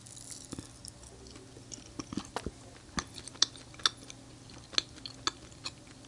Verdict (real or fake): real